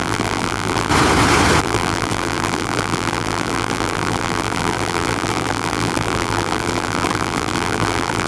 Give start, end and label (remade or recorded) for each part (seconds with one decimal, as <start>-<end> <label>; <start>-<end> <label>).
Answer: 0.0-0.9 remade; 0.9-1.6 recorded; 1.6-8.3 remade